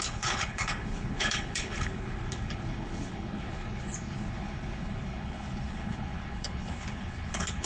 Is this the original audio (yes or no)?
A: no